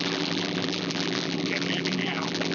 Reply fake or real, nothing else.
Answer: fake